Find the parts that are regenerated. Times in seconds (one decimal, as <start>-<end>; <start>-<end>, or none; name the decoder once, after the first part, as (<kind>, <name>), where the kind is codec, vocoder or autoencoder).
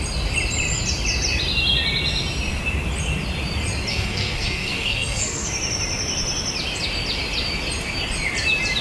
3.9-5.5 (codec, SNAC)